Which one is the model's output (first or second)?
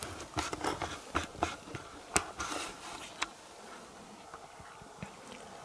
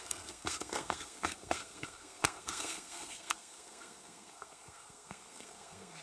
second